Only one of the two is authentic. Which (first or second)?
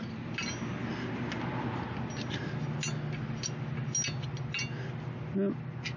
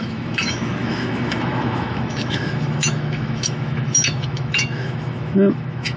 first